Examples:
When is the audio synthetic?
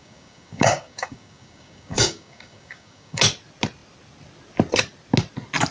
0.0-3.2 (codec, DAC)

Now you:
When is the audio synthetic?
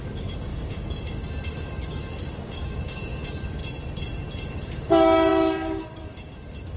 0.0-3.6 (codec, DAC); 4.5-6.8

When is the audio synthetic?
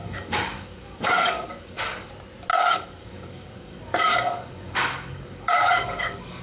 0.0-2.1 (codec, DAC); 2.5-6.4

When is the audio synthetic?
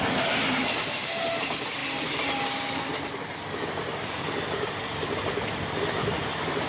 none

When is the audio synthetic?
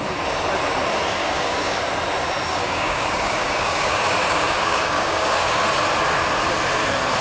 1.2-1.8 (codec, DAC); 2.5-5.6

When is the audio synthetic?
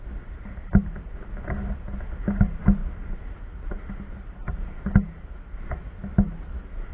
none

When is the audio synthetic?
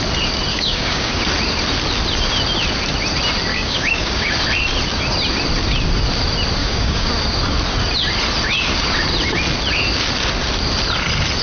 0.5-1.2 (codec, DAC); 3.5-4.3; 6.6-7.1